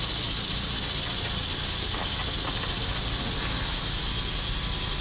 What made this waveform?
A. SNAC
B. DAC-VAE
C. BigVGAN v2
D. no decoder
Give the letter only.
D